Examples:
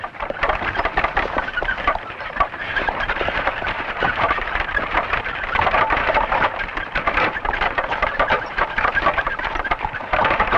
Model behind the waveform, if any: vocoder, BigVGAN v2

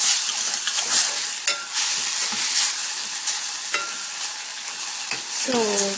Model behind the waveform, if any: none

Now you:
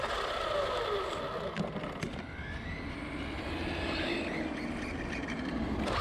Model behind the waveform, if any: none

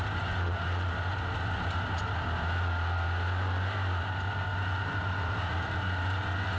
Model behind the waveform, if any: none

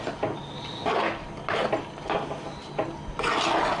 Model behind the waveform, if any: none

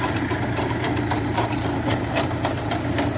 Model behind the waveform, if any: vocoder, BigVGAN v2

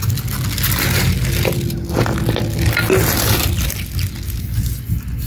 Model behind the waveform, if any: none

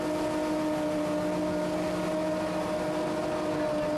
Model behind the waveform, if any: none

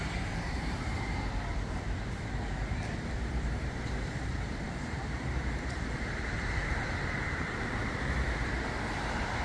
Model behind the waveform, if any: vocoder, BigVGAN v2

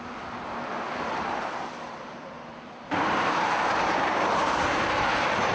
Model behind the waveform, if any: vocoder, BigVGAN v2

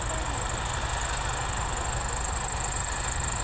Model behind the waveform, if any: none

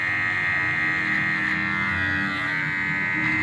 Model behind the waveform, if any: none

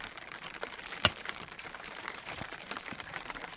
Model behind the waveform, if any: vocoder, BigVGAN v2